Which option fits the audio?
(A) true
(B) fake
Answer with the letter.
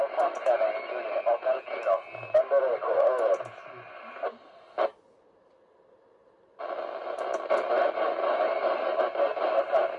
A